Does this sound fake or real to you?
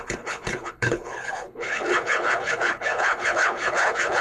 fake